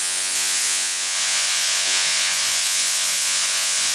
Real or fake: fake